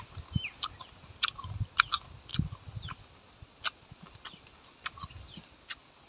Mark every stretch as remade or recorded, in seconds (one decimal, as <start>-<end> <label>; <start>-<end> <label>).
0.0-6.1 recorded